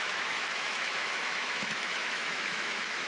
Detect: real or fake fake